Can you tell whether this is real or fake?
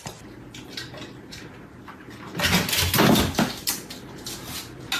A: real